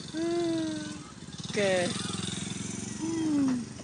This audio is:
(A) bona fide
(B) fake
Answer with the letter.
A